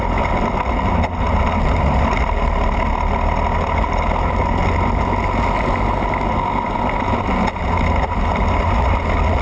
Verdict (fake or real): real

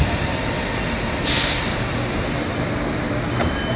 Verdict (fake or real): real